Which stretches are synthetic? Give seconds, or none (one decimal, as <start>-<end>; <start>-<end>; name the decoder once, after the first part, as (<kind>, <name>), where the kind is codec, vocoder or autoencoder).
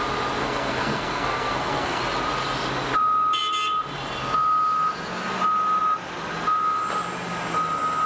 0.4-2.0 (codec, SNAC)